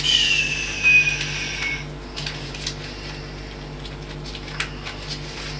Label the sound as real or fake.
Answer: real